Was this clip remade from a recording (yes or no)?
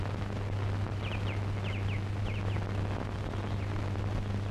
no